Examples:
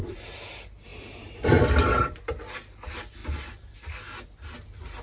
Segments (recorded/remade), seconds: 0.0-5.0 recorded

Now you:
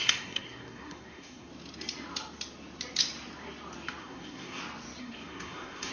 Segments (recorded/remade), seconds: 0.0-1.5 remade; 1.5-4.0 recorded; 4.0-4.6 remade; 4.6-5.0 recorded; 5.0-5.9 remade

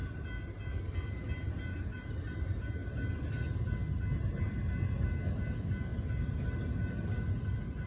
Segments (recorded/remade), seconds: 0.0-2.8 remade; 2.8-5.5 recorded; 5.5-5.9 remade; 5.9-6.9 recorded; 6.9-7.9 remade

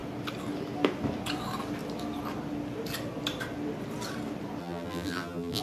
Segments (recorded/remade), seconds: 0.0-4.6 recorded; 4.6-5.6 remade